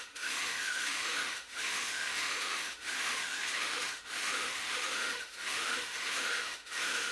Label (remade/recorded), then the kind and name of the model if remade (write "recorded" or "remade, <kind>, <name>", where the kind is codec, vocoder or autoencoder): remade, autoencoder, DAC-VAE